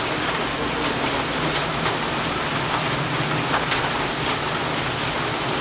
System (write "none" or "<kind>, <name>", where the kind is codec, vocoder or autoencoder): none